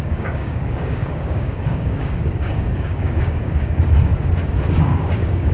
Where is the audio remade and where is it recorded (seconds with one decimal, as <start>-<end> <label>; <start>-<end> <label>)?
0.0-4.1 remade; 4.1-4.8 recorded; 4.8-5.5 remade